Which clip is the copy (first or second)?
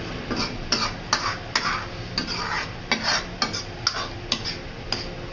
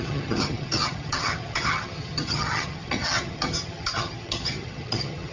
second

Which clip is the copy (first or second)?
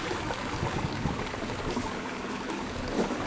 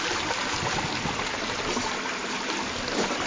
first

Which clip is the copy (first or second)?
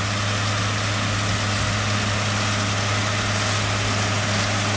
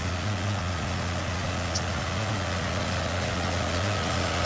second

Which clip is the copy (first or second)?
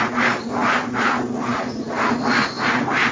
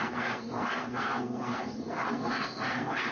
second